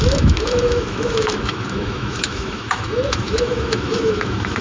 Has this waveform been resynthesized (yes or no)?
yes